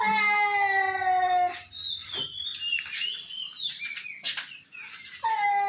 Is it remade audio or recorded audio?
recorded